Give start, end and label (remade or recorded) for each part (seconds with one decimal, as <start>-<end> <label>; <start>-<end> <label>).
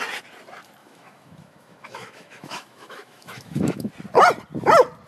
0.0-0.8 recorded; 0.8-3.9 remade; 3.9-5.1 recorded